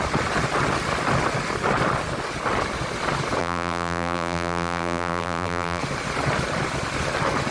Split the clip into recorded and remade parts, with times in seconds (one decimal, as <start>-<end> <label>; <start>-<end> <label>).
0.0-3.4 recorded; 3.4-5.8 remade; 5.8-7.5 recorded